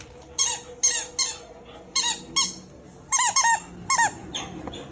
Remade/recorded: recorded